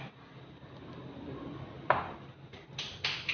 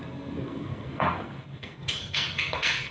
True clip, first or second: first